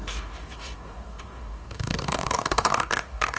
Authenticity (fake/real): fake